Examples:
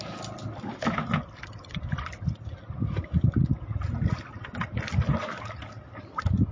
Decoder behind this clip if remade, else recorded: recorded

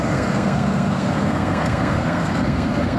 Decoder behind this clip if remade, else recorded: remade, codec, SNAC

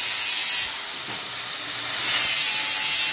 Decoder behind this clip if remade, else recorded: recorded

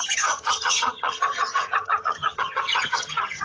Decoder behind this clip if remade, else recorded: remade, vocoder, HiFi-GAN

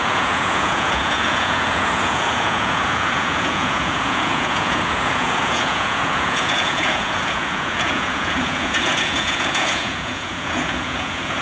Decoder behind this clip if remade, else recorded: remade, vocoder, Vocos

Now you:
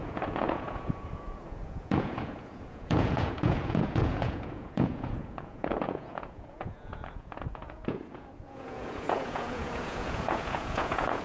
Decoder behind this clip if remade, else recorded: remade, vocoder, Vocos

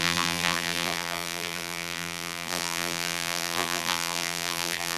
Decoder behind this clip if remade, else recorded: remade, vocoder, BigVGAN v2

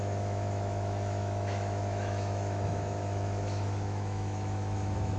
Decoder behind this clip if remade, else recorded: remade, autoencoder, DAC-VAE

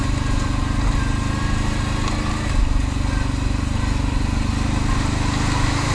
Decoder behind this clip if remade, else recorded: recorded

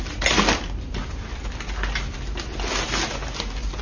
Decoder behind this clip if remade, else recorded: recorded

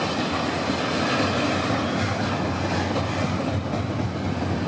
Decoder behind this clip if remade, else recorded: recorded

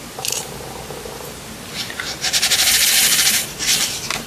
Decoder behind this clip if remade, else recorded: remade, vocoder, BigVGAN v2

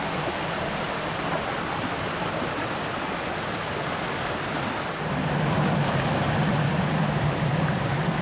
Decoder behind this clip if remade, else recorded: recorded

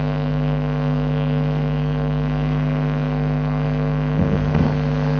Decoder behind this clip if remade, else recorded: remade, codec, SNAC